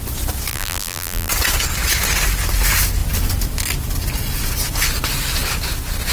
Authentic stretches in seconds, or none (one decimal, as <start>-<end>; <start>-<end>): 0.0-0.5; 1.3-6.1